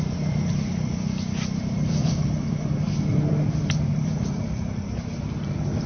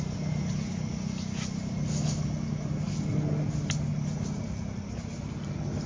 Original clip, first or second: second